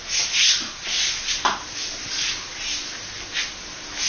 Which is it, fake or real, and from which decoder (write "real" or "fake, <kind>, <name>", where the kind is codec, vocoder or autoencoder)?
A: real